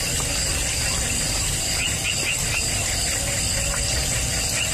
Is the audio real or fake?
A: fake